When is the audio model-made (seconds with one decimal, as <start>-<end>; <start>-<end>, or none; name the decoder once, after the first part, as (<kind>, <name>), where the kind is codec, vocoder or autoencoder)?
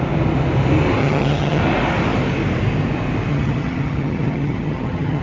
1.0-1.6 (vocoder, HiFi-GAN); 3.3-5.2